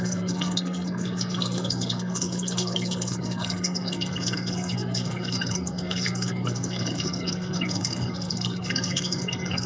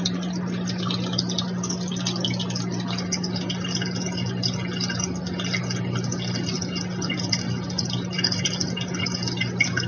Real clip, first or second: second